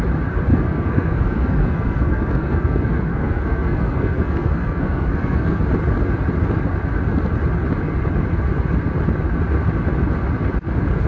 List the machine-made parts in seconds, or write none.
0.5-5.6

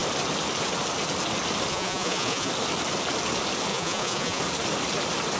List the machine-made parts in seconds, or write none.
1.7-2.5; 3.7-4.4

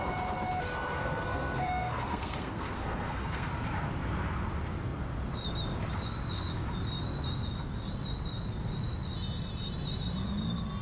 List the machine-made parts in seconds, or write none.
1.0-3.5

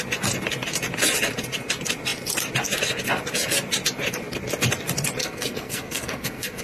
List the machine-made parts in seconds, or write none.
5.2-6.6

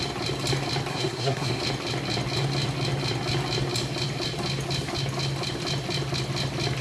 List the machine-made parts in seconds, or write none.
0.9-1.6

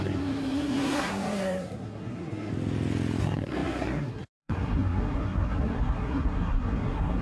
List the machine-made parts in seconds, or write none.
0.0-2.5; 3.2-7.2